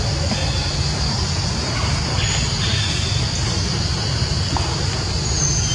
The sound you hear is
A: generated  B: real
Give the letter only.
B